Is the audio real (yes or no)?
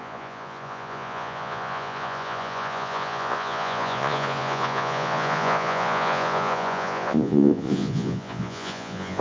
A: no